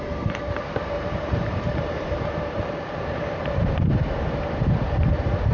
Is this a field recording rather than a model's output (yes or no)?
no